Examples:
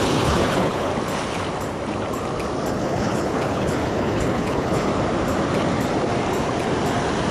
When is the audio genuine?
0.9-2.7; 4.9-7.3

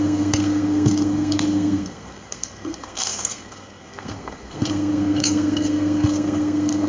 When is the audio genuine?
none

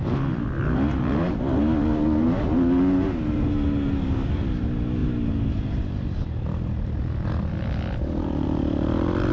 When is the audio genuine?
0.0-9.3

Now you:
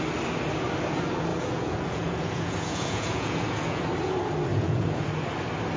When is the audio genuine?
0.0-1.3; 3.8-4.5; 5.1-5.8

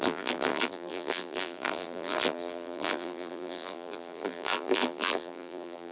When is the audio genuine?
none

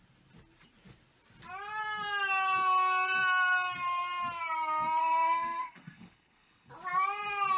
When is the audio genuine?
0.0-5.0; 6.7-7.6

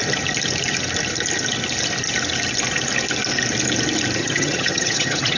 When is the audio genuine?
0.0-4.2